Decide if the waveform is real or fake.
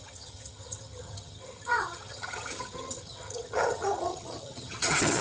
fake